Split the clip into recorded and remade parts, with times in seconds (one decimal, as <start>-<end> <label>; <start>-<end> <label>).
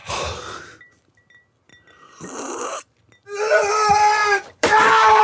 0.0-4.2 recorded; 4.2-5.2 remade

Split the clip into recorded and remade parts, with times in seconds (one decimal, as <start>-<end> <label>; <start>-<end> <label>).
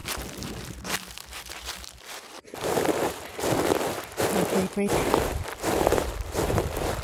0.0-1.7 recorded; 1.7-7.0 remade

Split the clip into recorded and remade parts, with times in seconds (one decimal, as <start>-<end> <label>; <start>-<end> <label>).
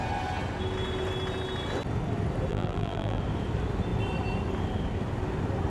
0.0-2.5 recorded; 2.5-3.2 remade; 3.2-5.7 recorded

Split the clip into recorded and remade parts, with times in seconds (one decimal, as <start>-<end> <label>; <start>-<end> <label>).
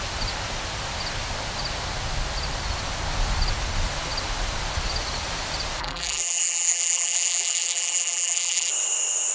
0.0-5.8 recorded; 5.8-8.7 remade; 8.7-9.3 recorded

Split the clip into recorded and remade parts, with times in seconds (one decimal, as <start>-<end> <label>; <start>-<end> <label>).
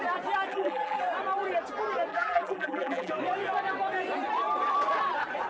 0.0-0.5 recorded; 0.5-1.0 remade; 1.0-2.1 recorded; 2.1-3.1 remade; 3.1-5.5 recorded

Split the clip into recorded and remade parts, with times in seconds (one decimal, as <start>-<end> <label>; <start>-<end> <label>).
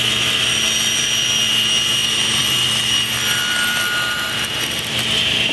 0.0-2.0 recorded; 2.0-4.5 remade; 4.5-5.5 recorded